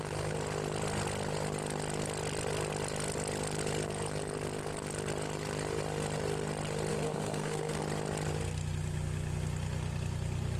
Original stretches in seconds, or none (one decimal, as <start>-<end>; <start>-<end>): 0.0-6.9; 7.8-10.6